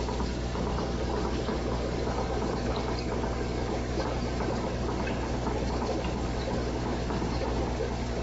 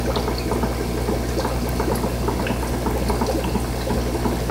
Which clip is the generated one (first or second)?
first